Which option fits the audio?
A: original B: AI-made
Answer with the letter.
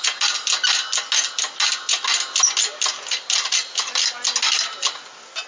A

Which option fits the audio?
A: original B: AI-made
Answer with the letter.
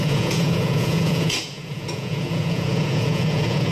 B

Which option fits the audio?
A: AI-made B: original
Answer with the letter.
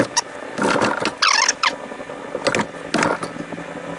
B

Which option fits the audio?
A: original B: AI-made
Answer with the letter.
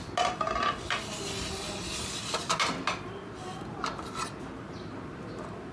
A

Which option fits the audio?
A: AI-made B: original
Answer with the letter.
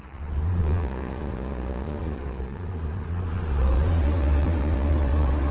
A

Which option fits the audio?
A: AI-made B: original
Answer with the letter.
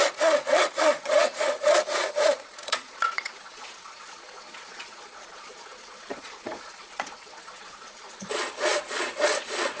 A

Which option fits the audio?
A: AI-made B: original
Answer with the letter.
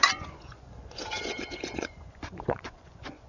A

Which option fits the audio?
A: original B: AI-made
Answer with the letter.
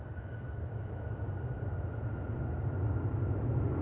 A